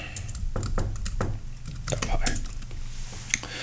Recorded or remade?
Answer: recorded